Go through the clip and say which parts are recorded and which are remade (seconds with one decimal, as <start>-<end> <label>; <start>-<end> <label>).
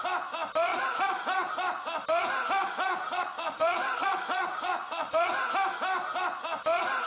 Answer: 0.0-0.7 recorded; 0.7-1.5 remade; 1.5-2.6 recorded; 2.6-5.3 remade; 5.3-7.1 recorded